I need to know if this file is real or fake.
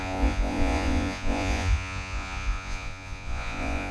fake